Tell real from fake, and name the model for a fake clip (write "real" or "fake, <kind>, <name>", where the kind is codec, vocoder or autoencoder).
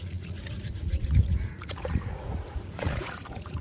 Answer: fake, vocoder, Vocos